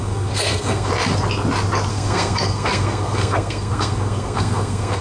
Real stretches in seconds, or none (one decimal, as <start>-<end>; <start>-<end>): 0.9-1.9